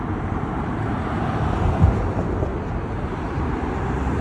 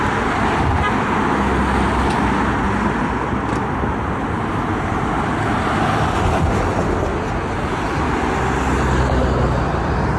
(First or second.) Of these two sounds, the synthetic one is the first